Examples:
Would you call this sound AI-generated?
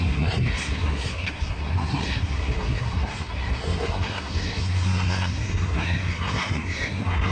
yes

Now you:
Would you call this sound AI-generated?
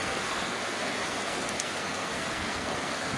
yes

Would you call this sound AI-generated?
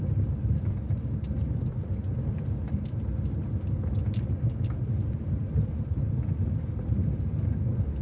no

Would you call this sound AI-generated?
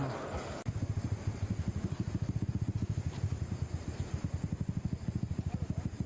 no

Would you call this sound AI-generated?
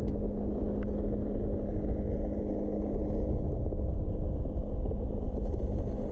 no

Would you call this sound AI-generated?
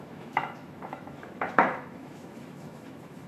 yes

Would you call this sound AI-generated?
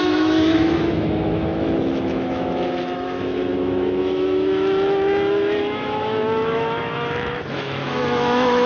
yes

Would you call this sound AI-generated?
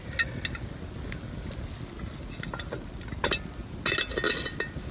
no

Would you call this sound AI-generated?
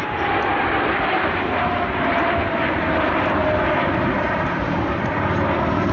no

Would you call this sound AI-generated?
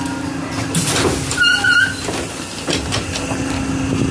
no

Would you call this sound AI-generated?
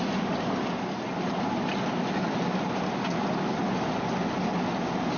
no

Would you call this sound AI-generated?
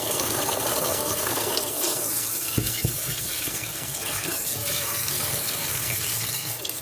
yes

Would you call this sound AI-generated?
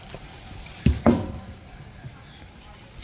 no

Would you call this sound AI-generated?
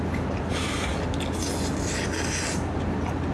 no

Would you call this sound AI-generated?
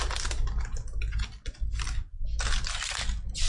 no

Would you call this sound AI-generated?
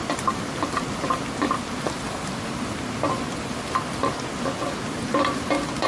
no